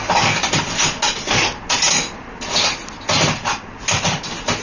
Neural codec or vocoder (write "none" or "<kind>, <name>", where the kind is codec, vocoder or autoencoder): none